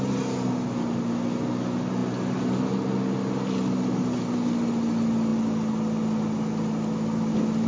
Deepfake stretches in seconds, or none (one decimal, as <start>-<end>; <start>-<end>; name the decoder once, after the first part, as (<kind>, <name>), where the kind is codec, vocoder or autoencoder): none